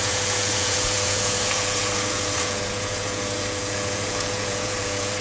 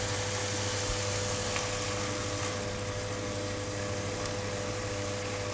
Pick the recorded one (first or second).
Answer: second